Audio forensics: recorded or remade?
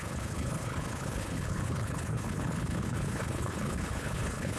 remade